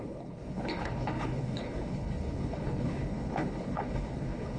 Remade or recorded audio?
remade